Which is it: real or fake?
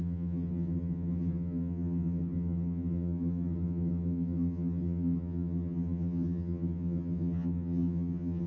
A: fake